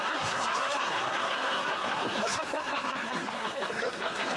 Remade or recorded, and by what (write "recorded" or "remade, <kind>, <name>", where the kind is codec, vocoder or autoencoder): remade, codec, SNAC